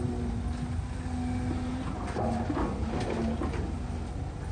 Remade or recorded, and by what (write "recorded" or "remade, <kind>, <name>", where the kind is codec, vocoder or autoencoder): recorded